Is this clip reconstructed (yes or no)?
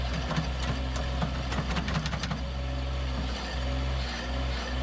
no